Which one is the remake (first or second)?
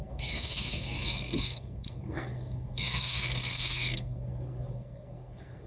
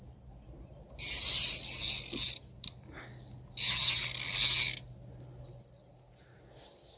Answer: first